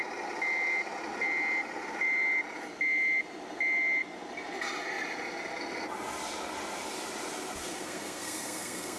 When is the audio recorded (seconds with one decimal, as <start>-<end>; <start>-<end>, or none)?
0.0-7.6